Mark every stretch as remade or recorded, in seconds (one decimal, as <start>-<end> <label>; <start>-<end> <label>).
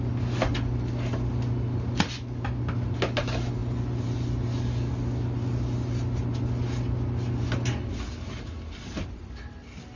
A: 0.0-10.0 recorded